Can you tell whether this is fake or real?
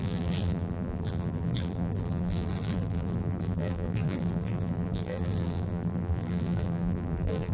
fake